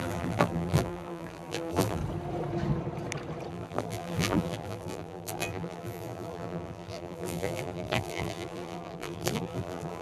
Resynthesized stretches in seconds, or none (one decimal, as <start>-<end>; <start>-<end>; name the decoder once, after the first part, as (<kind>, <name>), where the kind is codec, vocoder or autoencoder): 0.0-2.0 (vocoder, BigVGAN v2); 3.5-10.0